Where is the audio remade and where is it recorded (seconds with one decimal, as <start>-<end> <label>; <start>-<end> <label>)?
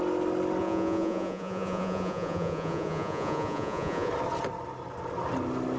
0.0-0.6 recorded; 0.6-4.1 remade; 4.1-5.8 recorded